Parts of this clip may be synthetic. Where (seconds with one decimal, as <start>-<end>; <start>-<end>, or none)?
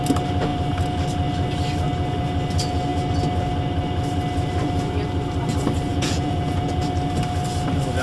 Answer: 5.9-6.8